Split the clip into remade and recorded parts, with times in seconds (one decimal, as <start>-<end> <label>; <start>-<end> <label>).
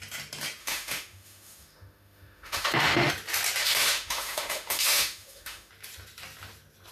0.0-0.6 recorded; 0.6-3.1 remade; 3.1-3.6 recorded; 3.6-5.7 remade; 5.7-6.9 recorded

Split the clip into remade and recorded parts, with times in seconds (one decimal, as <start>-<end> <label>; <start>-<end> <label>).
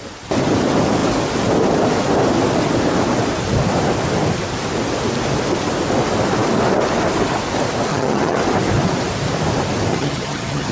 0.0-7.9 recorded; 7.9-8.4 remade; 8.4-9.9 recorded; 9.9-10.7 remade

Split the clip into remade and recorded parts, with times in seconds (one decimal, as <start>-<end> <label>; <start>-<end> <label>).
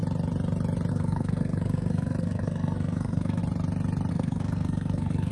0.0-0.9 recorded; 0.9-3.4 remade; 3.4-4.1 recorded; 4.1-5.3 remade